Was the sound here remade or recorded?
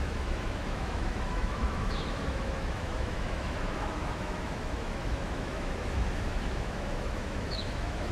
remade